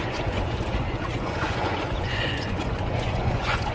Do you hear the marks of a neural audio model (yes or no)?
yes